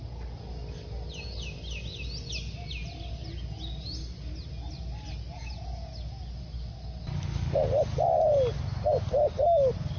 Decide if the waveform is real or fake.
real